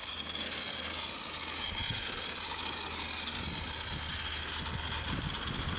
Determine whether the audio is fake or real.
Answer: real